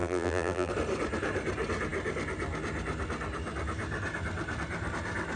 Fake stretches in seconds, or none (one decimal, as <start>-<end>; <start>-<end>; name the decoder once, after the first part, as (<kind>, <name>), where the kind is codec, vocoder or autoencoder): 0.0-0.7 (vocoder, BigVGAN v2)